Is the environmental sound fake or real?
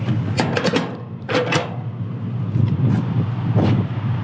real